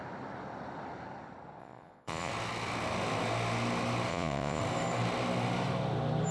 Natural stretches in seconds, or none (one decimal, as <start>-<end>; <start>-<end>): 0.0-1.6; 2.3-4.1; 4.6-6.3